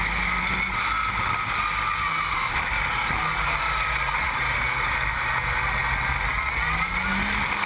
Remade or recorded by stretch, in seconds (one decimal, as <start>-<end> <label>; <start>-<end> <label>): 0.0-7.7 recorded